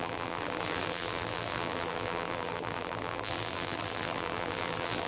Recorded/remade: remade